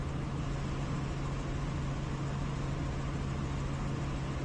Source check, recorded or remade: recorded